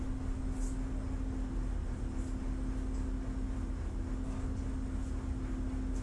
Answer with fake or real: real